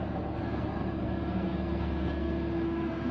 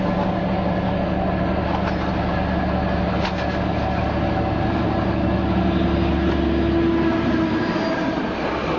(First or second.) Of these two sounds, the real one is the second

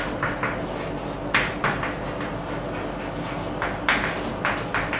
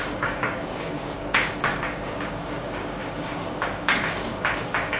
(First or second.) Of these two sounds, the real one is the first